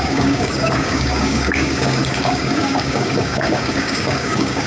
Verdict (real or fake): fake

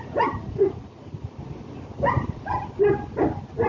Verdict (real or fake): real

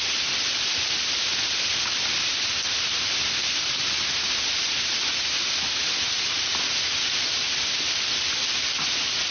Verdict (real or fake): real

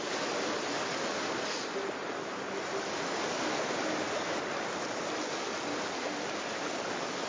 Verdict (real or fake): real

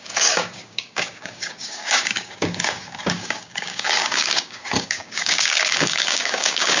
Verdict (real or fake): fake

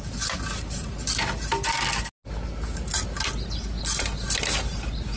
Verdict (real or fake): real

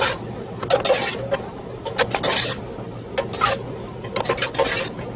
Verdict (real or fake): real